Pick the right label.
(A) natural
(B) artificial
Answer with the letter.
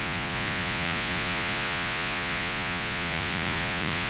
B